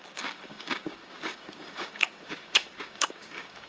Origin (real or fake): fake